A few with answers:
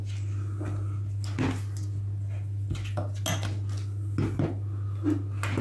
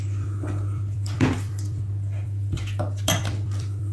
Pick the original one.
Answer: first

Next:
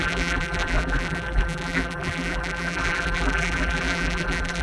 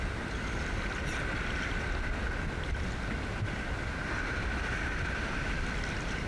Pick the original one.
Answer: second